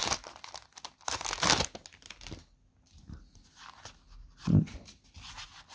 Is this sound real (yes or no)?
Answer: yes